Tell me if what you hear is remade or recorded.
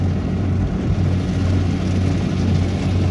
recorded